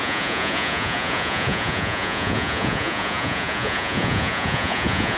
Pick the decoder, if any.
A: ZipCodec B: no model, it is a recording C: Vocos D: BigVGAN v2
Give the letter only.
C